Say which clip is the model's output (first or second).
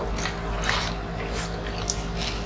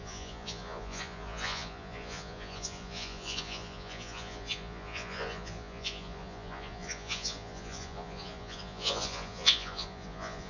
second